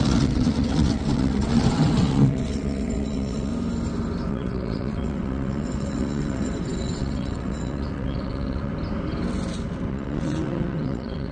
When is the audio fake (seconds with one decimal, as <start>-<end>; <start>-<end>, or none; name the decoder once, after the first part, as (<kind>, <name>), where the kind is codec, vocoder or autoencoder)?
0.0-3.5 (vocoder, WaveNeXt); 4.3-8.7; 9.9-11.3